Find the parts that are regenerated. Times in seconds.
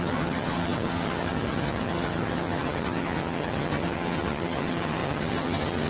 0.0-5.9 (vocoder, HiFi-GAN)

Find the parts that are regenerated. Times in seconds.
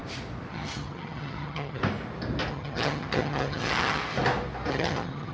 0.5-1.8 (vocoder, HiFi-GAN); 2.5-4.0; 4.7-5.3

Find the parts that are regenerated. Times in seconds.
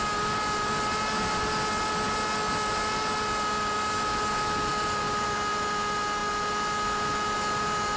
none